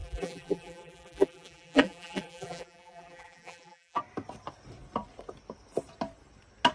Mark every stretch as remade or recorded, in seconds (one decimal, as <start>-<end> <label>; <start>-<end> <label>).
0.0-4.0 remade; 4.0-6.7 recorded